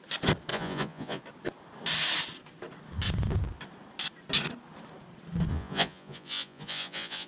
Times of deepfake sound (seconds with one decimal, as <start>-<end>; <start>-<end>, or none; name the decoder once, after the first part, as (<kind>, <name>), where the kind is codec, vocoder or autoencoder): 0.5-1.2 (vocoder, Vocos); 5.5-7.3